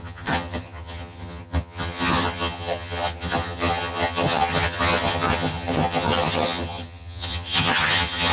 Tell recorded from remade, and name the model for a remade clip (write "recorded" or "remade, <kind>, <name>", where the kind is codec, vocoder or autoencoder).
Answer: remade, vocoder, HiFi-GAN